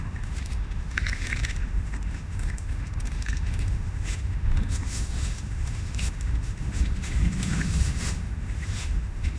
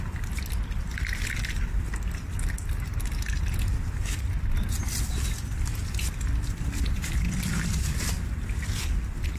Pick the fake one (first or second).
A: first